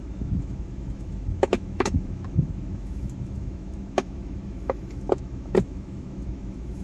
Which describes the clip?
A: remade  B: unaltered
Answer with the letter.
A